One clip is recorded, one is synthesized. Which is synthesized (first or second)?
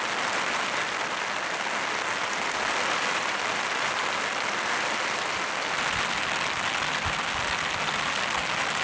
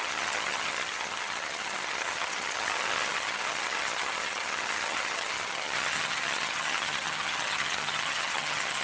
second